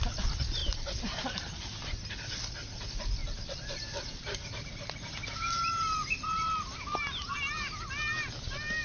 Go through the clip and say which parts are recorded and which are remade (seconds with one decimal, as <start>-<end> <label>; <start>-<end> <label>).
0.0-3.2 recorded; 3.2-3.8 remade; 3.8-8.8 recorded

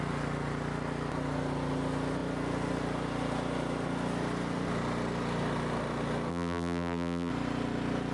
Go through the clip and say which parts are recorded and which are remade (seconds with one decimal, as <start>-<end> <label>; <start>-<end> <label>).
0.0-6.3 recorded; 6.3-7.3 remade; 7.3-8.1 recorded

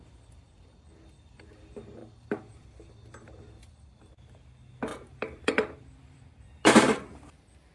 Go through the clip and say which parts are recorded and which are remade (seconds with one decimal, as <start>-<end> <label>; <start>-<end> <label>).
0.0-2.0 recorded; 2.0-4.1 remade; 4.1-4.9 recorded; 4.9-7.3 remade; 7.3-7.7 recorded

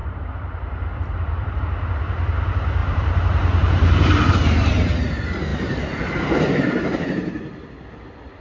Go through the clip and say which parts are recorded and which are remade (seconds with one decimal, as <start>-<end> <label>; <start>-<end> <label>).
0.0-1.6 remade; 1.6-2.8 recorded; 2.8-4.3 remade; 4.3-5.5 recorded; 5.5-6.4 remade; 6.4-8.4 recorded

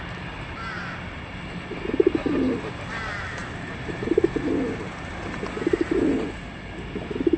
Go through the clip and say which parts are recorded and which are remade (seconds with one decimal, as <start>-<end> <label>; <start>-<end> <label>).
0.0-3.4 recorded; 3.4-4.1 remade; 4.1-7.4 recorded

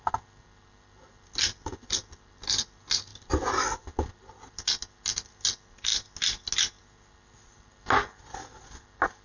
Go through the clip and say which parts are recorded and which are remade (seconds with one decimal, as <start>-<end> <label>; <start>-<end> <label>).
0.0-3.1 recorded; 3.1-4.5 remade; 4.5-9.2 recorded

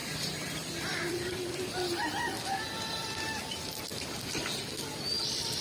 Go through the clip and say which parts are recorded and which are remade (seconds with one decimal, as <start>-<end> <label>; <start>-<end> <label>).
0.0-3.4 remade; 3.4-3.9 recorded; 3.9-4.6 remade; 4.6-5.6 recorded

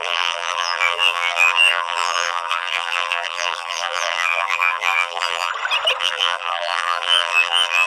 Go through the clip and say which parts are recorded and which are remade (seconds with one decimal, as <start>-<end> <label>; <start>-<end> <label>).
0.0-5.5 remade; 5.5-6.0 recorded; 6.0-7.9 remade